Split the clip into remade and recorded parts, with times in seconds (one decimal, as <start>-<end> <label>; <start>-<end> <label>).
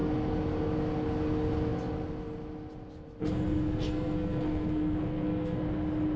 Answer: 0.0-3.2 recorded; 3.2-5.6 remade; 5.6-6.2 recorded